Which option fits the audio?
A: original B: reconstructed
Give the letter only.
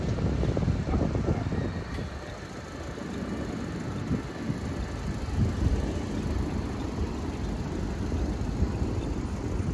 A